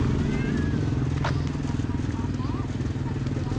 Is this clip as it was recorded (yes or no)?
yes